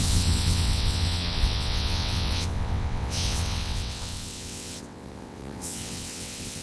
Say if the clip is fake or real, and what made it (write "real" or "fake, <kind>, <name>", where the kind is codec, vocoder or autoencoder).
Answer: fake, vocoder, WaveNeXt